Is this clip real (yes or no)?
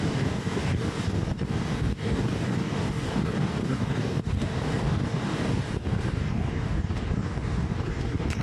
no